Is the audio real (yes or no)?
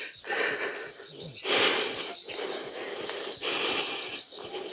yes